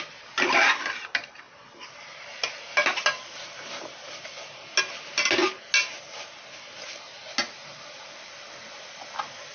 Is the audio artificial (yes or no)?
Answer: no